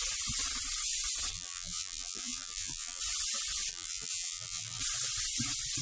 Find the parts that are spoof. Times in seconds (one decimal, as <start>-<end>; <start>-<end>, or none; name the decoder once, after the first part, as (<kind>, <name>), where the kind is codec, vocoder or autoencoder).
1.3-3.0 (vocoder, BigVGAN v2); 3.7-4.8